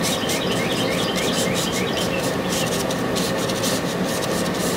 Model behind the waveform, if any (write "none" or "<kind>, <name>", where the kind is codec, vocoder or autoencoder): none